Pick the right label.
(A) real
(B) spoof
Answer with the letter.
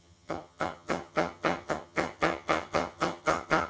B